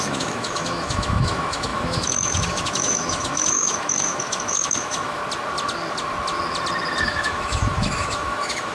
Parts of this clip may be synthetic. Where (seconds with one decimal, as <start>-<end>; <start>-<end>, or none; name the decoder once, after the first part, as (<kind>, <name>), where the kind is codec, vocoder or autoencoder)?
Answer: 0.0-5.2 (autoencoder, DAC-VAE); 7.0-8.7